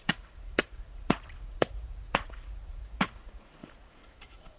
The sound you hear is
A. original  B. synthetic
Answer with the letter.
B